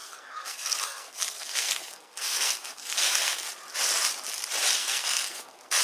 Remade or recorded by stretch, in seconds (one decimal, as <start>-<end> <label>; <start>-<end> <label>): 0.0-3.5 remade; 3.5-4.8 recorded; 4.8-5.8 remade